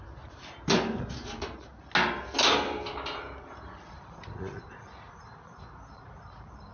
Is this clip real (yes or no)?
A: yes